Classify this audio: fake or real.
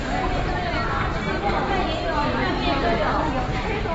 real